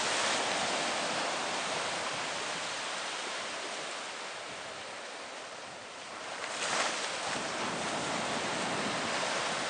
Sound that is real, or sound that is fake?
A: real